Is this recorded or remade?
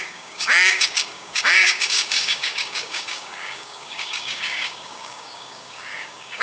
remade